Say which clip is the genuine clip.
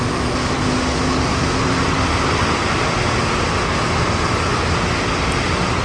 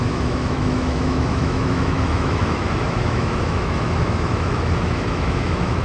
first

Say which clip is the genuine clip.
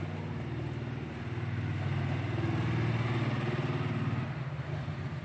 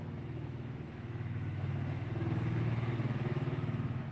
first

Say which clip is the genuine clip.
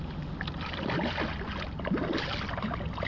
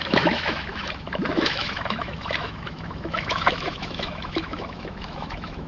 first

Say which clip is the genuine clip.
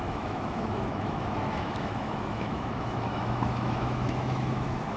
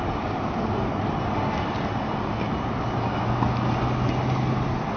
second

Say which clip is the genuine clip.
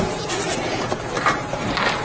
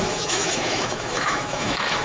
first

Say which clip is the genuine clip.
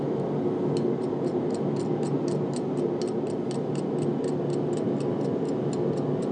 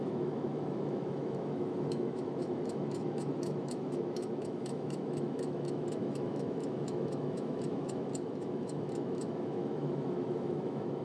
first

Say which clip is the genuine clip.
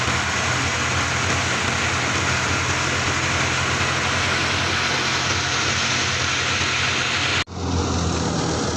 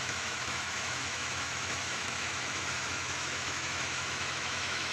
first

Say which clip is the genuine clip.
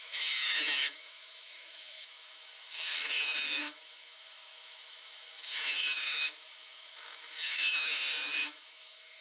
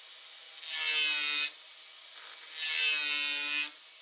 second